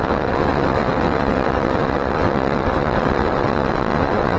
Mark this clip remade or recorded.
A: remade